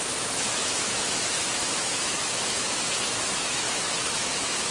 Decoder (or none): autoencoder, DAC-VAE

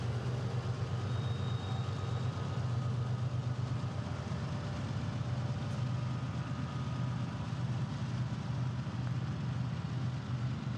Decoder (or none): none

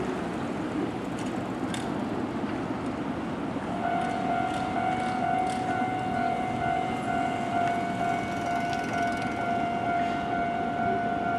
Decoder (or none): none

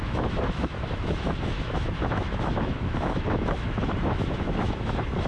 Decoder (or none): autoencoder, DAC-VAE